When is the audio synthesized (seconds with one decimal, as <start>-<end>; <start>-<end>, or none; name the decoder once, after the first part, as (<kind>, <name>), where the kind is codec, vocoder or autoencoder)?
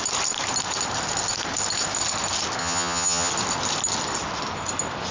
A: 2.6-3.3 (vocoder, HiFi-GAN)